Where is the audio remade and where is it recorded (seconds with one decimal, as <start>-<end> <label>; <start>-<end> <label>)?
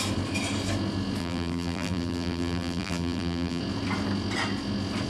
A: 0.0-1.2 recorded; 1.2-3.6 remade; 3.6-5.1 recorded